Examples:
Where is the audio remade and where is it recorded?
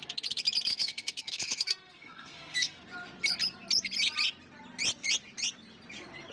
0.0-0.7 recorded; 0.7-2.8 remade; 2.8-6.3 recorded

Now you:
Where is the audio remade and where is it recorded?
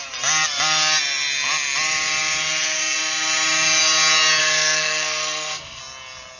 0.0-4.4 recorded; 4.4-5.8 remade; 5.8-6.4 recorded